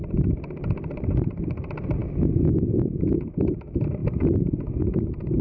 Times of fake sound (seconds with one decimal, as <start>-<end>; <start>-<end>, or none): 2.0-2.7